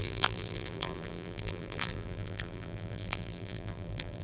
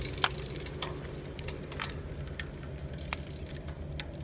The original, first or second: second